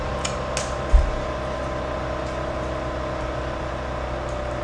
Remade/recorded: recorded